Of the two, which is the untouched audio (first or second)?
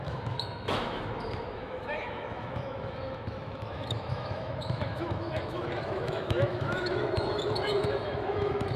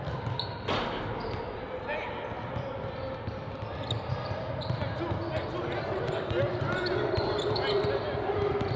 second